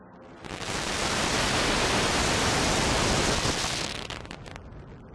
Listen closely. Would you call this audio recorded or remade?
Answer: recorded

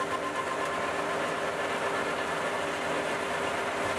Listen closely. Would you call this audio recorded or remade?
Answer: recorded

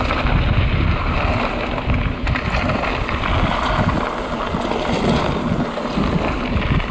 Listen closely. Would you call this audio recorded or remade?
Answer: recorded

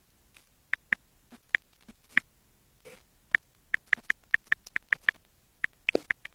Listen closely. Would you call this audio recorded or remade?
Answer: recorded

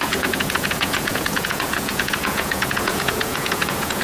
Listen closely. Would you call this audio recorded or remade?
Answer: remade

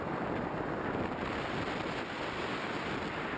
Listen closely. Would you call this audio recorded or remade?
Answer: recorded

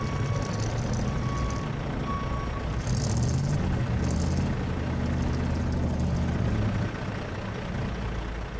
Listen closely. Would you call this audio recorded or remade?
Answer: recorded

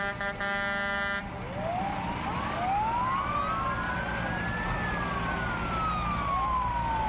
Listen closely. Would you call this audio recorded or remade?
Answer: recorded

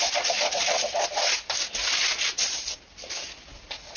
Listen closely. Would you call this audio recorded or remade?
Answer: recorded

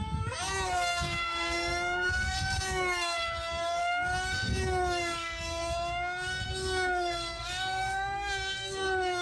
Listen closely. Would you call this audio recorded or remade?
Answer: remade